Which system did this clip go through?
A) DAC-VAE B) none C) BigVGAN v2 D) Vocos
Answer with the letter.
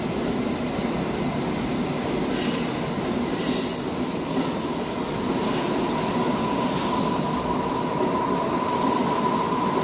B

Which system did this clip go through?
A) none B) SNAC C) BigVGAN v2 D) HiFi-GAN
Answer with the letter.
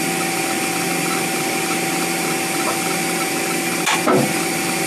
A